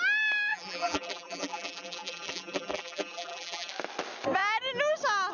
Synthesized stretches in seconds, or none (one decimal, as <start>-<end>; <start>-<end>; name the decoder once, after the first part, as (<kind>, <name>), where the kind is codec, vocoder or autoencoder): 0.5-3.7 (vocoder, BigVGAN v2)